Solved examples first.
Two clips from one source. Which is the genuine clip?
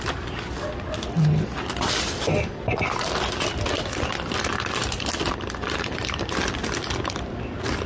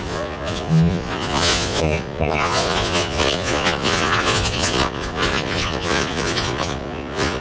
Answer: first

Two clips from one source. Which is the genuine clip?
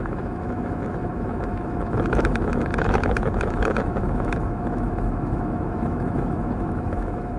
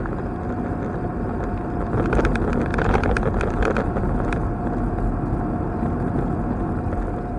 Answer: second